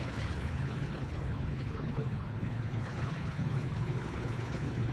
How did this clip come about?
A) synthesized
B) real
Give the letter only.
A